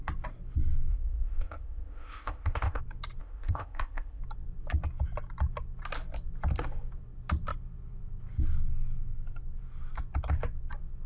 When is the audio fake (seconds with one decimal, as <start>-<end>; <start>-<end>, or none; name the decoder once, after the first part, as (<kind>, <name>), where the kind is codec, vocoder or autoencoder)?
0.9-2.8 (codec, ZipCodec); 3.2-4.2